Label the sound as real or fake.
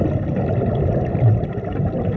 real